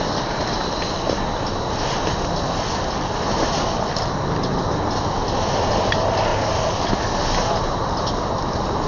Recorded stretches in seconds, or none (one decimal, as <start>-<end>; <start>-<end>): 0.0-8.9